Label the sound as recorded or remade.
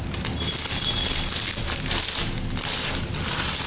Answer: recorded